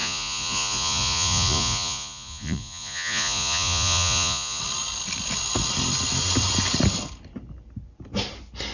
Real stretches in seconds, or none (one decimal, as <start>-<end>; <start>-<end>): 4.6-8.7